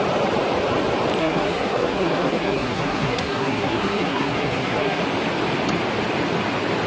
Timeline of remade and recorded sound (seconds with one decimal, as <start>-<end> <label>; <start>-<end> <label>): 0.0-1.2 recorded; 1.2-5.0 remade; 5.0-6.9 recorded